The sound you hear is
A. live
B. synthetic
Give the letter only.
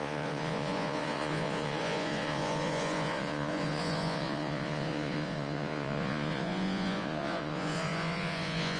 B